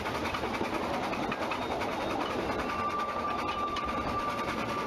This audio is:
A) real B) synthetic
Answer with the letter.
A